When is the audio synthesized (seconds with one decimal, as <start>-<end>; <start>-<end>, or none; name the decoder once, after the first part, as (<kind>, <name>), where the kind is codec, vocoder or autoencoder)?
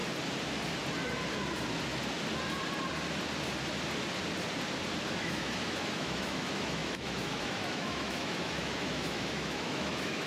5.2-10.3 (autoencoder, DAC-VAE)